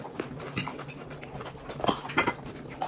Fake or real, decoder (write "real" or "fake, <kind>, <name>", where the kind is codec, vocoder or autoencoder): real